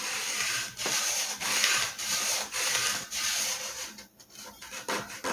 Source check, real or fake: fake